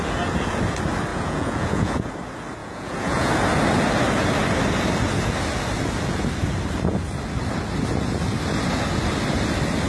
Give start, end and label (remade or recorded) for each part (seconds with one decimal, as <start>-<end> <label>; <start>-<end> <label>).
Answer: 0.0-1.1 recorded; 1.1-2.1 remade; 2.1-2.6 recorded; 2.6-3.3 remade; 3.3-9.9 recorded